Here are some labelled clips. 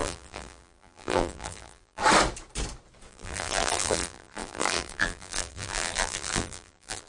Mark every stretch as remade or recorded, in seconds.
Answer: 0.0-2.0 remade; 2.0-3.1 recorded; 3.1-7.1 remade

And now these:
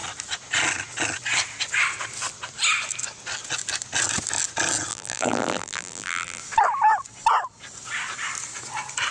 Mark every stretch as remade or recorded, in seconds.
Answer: 0.0-4.9 recorded; 4.9-6.4 remade; 6.4-9.1 recorded

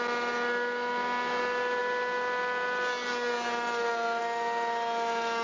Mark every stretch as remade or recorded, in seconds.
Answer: 0.0-5.4 recorded

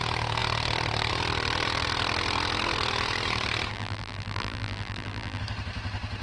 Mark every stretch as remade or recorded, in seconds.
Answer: 0.0-3.7 recorded; 3.7-5.4 remade; 5.4-6.2 recorded

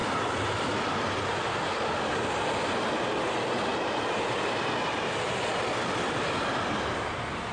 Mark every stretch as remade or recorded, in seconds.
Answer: 0.0-0.9 remade; 0.9-7.5 recorded